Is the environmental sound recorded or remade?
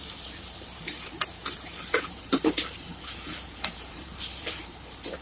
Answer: remade